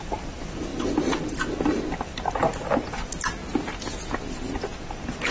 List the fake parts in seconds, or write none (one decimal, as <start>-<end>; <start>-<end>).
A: 0.0-3.4; 4.2-5.3